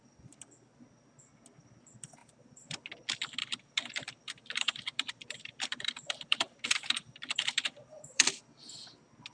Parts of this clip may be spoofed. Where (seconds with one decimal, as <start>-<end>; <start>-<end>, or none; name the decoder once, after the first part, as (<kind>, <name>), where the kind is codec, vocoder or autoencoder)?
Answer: 2.2-2.8 (vocoder, BigVGAN v2); 3.4-8.4